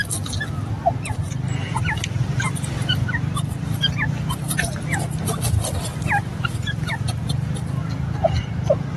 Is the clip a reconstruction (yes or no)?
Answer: no